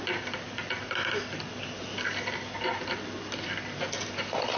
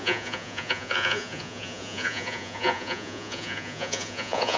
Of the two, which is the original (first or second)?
first